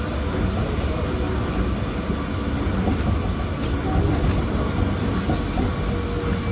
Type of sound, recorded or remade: recorded